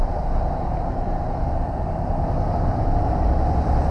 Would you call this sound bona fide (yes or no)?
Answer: no